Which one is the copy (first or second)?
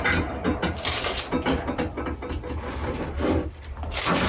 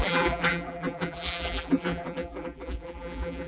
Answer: second